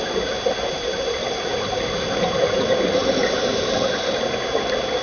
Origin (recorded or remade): recorded